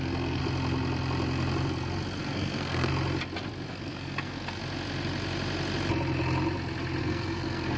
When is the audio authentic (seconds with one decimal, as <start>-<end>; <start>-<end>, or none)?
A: 0.4-2.2; 2.9-3.7; 4.6-7.0